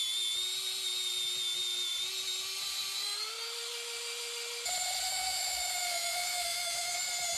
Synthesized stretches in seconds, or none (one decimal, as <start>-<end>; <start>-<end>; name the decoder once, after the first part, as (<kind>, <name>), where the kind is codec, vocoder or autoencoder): 5.1-7.0 (autoencoder, DAC-VAE)